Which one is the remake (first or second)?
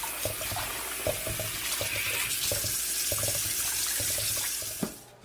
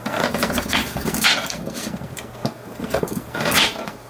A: second